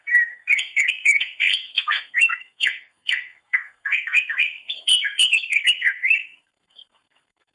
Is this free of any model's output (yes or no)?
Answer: no